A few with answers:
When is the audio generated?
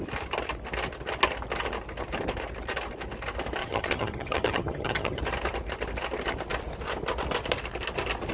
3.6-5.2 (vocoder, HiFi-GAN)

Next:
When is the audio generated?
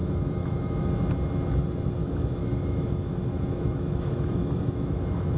0.0-0.9 (autoencoder, DAC-VAE); 2.0-5.4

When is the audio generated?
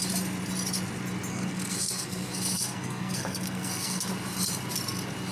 1.3-4.1 (codec, SNAC)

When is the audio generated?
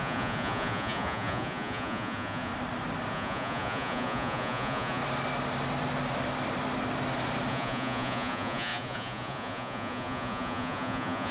0.0-2.5 (vocoder, Vocos); 3.1-5.0; 7.5-11.3